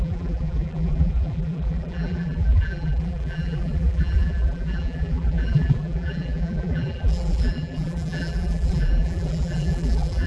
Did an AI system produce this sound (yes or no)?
yes